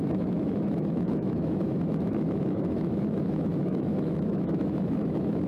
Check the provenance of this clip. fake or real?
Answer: fake